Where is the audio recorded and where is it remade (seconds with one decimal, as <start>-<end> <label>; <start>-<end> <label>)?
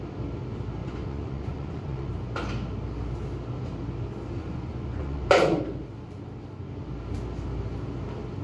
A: 0.0-0.8 recorded; 0.8-2.1 remade; 2.1-4.4 recorded; 4.4-5.6 remade; 5.6-8.4 recorded